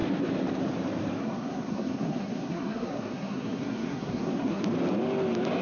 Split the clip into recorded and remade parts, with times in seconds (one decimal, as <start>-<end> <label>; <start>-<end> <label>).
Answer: 0.0-1.2 recorded; 1.2-4.6 remade; 4.6-5.6 recorded

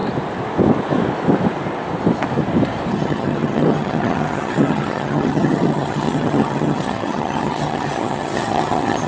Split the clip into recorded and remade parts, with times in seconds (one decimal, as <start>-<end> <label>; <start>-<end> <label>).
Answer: 0.0-2.9 recorded; 2.9-9.1 remade

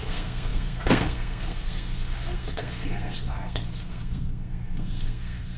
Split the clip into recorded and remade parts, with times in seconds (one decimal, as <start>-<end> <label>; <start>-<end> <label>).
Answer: 0.0-5.6 remade

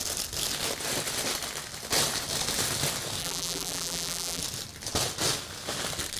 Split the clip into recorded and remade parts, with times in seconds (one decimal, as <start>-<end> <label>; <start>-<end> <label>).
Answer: 0.0-3.2 recorded; 3.2-4.4 remade; 4.4-6.2 recorded

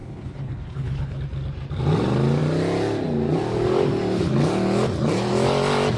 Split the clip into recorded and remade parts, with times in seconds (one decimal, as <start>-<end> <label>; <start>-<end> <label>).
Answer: 0.0-1.2 remade; 1.2-6.0 recorded

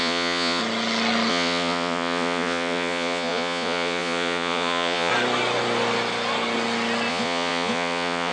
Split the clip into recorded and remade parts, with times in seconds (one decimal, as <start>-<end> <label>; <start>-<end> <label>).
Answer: 0.0-0.6 remade; 0.6-1.3 recorded; 1.3-5.1 remade; 5.1-7.1 recorded; 7.1-8.3 remade

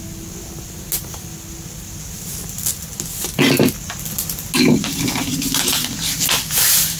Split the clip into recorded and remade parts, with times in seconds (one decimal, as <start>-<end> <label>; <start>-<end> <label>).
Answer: 0.0-7.0 recorded

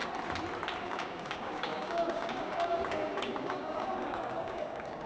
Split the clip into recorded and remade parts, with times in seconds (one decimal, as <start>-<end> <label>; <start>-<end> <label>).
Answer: 0.0-0.8 recorded; 0.8-5.1 remade